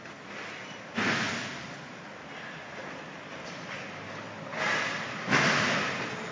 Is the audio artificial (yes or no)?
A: no